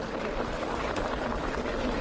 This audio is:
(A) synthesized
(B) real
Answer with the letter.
B